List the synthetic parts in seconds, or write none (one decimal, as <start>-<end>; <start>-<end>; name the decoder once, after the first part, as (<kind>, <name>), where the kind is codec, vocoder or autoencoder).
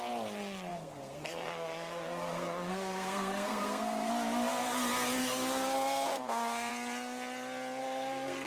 0.7-4.1 (codec, SNAC); 5.2-6.7; 7.8-8.5